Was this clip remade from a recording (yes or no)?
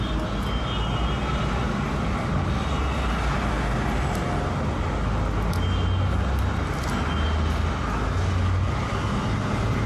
no